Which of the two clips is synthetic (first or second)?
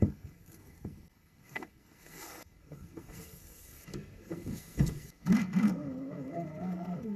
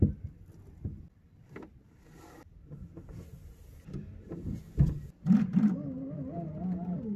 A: first